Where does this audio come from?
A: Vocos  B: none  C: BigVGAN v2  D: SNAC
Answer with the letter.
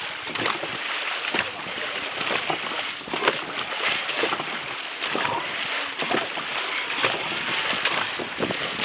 B